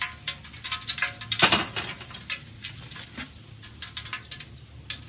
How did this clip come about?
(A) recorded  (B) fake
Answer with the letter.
A